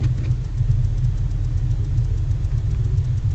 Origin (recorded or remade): recorded